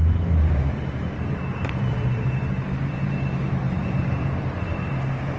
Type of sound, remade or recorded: remade